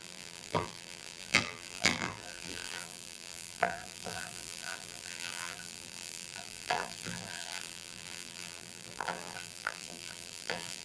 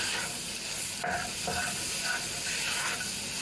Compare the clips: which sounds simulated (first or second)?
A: first